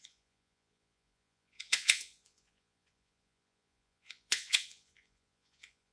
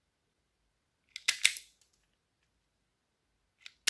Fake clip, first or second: first